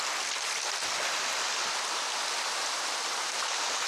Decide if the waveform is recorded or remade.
recorded